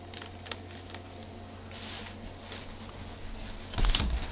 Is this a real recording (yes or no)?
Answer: yes